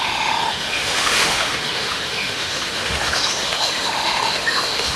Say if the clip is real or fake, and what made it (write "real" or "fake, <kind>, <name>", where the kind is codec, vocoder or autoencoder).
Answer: fake, autoencoder, DAC-VAE